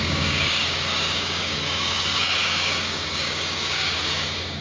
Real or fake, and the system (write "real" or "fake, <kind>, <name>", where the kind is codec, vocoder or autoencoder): fake, codec, DAC